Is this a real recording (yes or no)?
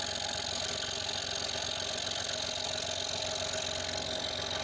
yes